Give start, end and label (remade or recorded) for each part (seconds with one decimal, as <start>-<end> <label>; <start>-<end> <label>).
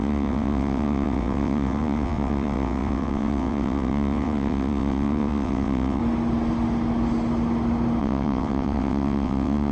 0.0-6.0 remade; 6.0-8.0 recorded; 8.0-9.7 remade